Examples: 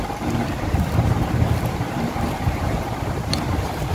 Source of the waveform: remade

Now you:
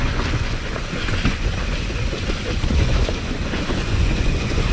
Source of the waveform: remade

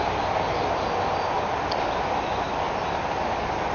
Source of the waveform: recorded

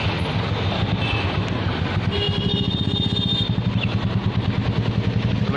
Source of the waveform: recorded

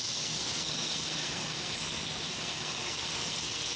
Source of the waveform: remade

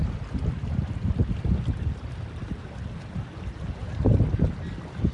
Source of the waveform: recorded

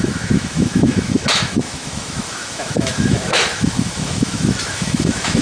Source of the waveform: remade